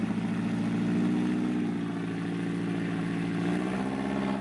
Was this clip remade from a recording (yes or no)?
no